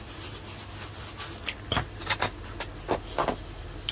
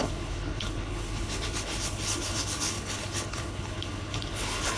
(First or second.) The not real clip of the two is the second